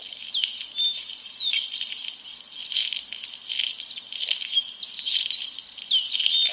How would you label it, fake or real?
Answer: real